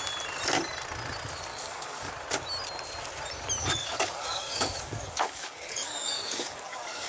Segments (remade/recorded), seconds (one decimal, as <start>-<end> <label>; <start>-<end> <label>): 0.0-1.5 recorded; 1.5-2.1 remade; 2.1-3.6 recorded; 3.6-7.1 remade